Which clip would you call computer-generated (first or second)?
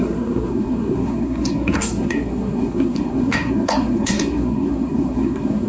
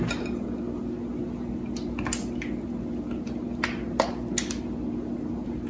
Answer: first